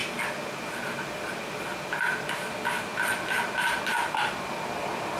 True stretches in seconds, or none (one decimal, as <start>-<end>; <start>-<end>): 0.0-5.2